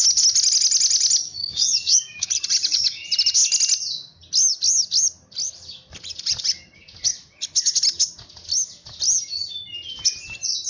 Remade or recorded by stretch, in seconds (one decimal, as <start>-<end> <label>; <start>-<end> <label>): 0.0-1.2 recorded; 1.2-2.3 remade; 2.3-10.7 recorded